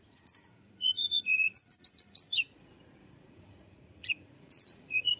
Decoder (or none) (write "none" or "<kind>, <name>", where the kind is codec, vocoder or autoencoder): vocoder, Vocos